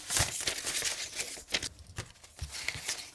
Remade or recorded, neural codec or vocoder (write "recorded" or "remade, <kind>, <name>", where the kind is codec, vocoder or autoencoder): recorded